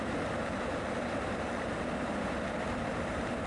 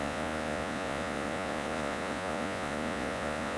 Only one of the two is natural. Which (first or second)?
first